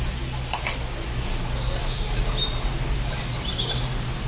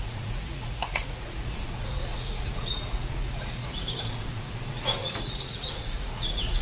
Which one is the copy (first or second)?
second